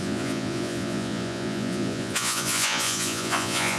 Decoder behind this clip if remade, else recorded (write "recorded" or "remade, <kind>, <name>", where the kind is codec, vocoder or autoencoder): remade, vocoder, Vocos